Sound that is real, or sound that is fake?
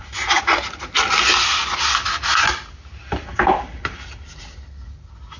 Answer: real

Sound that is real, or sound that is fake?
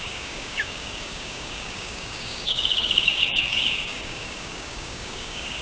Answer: fake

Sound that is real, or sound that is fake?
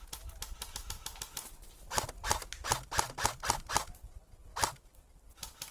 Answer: real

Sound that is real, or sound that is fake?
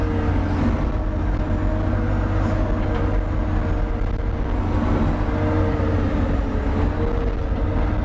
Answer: real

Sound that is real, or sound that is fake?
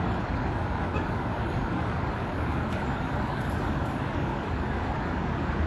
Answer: fake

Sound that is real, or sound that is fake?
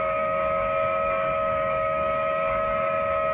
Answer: fake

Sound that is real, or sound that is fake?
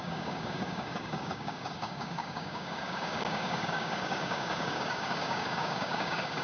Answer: fake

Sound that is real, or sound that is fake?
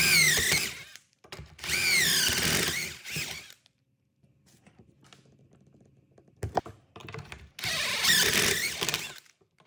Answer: real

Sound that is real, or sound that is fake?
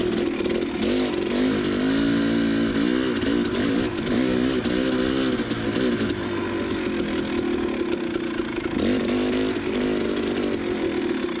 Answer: real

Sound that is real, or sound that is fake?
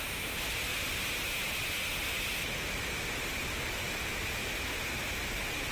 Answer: real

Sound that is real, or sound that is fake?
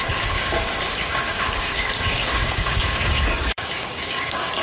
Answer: fake